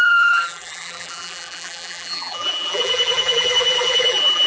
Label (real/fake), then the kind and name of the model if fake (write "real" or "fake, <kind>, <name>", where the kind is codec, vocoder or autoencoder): fake, vocoder, BigVGAN v2